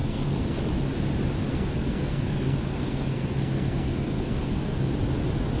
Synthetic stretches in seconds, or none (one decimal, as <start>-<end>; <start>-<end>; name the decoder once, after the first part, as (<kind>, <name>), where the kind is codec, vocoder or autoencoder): 0.0-0.6 (codec, SNAC); 1.5-4.9